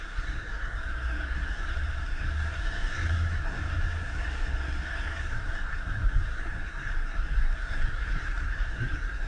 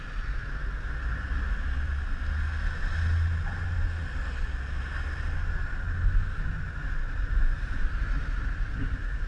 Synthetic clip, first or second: first